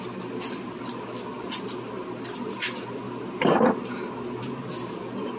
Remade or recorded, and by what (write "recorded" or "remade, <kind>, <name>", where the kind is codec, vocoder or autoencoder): recorded